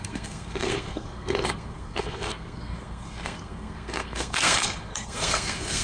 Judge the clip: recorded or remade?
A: remade